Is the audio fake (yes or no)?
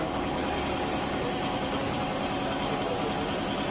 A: no